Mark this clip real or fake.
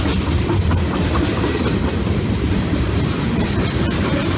fake